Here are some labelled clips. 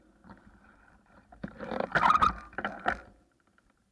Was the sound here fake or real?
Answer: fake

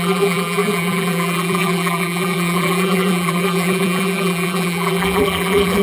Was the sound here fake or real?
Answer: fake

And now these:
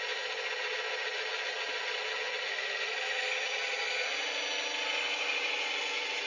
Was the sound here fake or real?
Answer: real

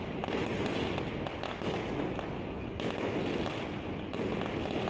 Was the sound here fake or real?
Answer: real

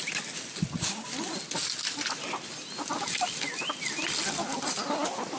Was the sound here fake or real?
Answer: real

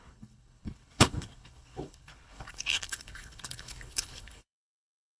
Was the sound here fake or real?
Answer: fake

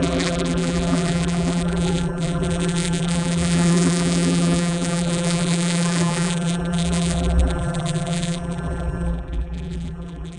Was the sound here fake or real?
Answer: fake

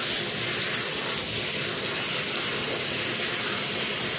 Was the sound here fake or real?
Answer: real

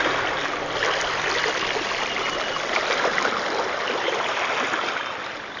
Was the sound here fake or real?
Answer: real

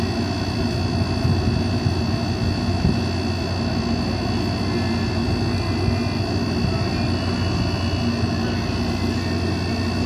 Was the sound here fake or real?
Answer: real